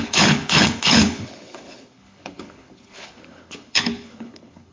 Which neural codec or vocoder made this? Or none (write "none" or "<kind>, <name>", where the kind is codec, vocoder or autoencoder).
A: codec, HILCodec